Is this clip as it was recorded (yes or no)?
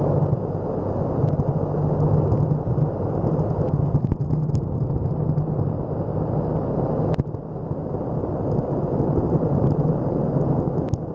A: yes